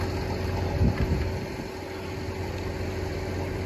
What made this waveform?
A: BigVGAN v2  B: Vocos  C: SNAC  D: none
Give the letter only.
D